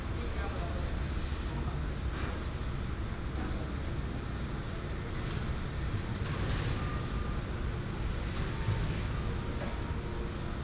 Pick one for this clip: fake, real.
real